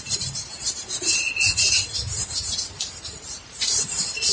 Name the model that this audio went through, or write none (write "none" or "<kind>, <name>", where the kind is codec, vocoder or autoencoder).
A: vocoder, BigVGAN v2